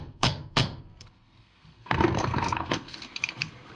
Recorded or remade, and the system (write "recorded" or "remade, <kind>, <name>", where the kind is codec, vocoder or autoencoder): remade, codec, SNAC